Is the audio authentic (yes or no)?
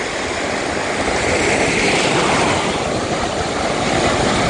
yes